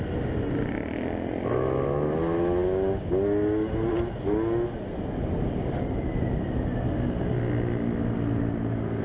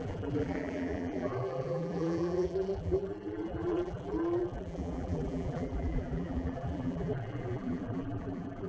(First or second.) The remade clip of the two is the second